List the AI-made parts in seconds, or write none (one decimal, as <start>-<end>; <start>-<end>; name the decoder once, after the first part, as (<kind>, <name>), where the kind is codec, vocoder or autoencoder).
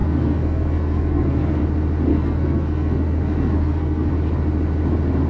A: 0.0-1.6 (codec, SNAC); 2.1-4.1